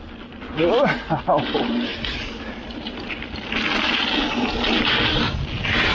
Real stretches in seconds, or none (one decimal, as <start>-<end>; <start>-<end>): 0.0-5.9